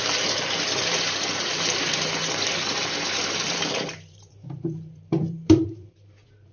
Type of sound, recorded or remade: remade